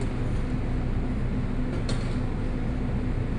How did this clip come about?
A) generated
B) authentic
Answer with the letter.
B